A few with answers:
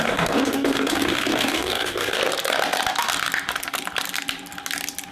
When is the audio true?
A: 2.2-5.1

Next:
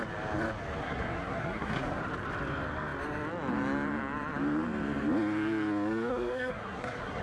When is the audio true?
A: 0.0-0.8; 2.0-6.1